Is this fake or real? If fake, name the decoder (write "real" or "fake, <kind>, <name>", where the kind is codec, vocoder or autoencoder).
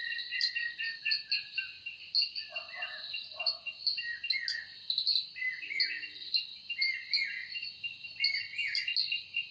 real